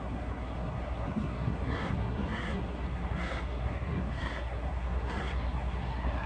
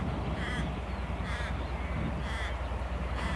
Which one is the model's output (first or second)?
first